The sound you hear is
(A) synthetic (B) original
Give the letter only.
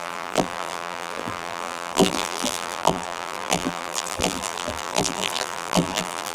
A